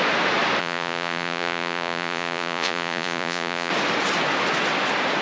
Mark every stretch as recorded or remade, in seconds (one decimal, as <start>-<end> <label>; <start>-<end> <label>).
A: 0.0-0.6 recorded; 0.6-3.7 remade; 3.7-5.2 recorded